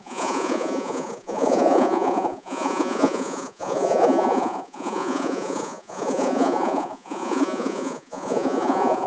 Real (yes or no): no